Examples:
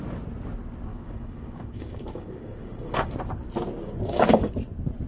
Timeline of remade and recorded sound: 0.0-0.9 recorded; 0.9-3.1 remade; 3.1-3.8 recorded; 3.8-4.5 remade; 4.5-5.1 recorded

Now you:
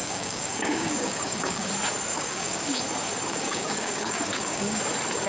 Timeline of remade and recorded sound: 0.0-1.7 remade; 1.7-2.1 recorded; 2.1-2.8 remade; 2.8-3.3 recorded; 3.3-4.8 remade; 4.8-5.3 recorded

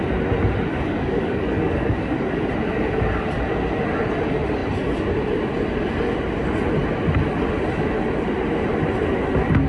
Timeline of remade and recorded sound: 0.0-0.7 recorded; 0.7-2.4 remade; 2.4-9.7 recorded

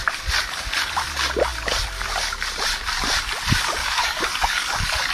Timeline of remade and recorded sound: 0.0-3.8 recorded; 3.8-5.1 remade

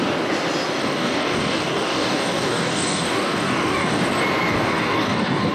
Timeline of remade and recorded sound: 0.0-0.8 recorded; 0.8-4.1 remade; 4.1-4.5 recorded; 4.5-5.5 remade

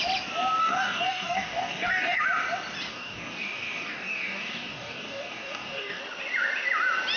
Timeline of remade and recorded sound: 0.0-0.6 recorded; 0.6-2.2 remade; 2.2-2.9 recorded; 2.9-6.0 remade; 6.0-7.2 recorded

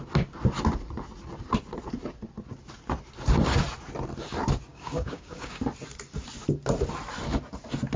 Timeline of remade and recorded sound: 0.0-4.7 recorded; 4.7-5.6 remade; 5.6-8.0 recorded

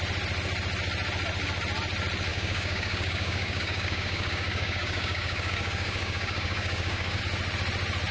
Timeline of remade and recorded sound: 0.0-2.3 recorded; 2.3-7.2 remade; 7.2-8.1 recorded